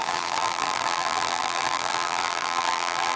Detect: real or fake fake